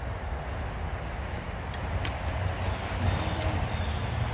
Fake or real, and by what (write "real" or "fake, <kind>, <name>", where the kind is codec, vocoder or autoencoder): real